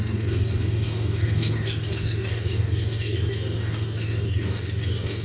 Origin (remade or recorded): remade